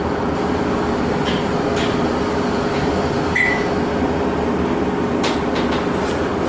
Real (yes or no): yes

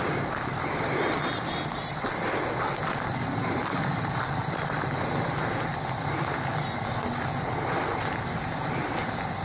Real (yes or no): yes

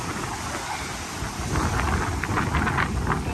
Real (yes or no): yes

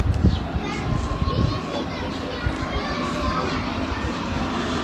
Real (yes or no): yes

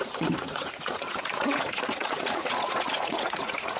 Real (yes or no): no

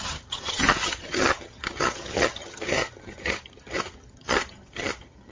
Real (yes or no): no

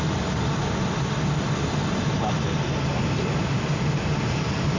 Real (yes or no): no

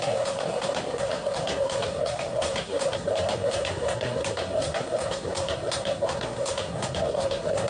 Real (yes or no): no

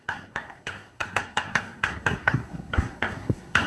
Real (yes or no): no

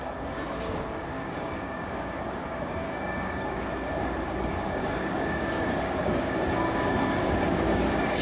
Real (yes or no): no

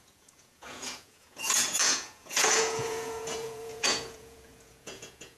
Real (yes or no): no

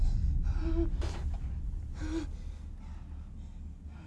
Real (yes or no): yes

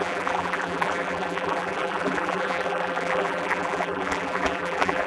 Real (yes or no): no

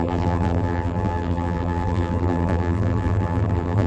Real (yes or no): no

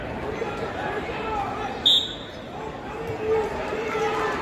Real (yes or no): yes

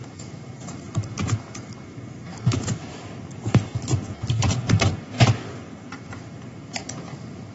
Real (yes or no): no